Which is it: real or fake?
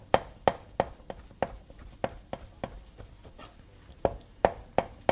real